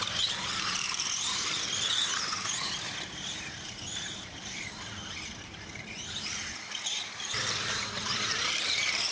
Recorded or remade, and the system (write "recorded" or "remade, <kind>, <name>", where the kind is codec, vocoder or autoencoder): remade, vocoder, BigVGAN v2